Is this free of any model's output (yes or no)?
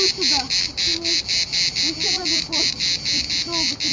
yes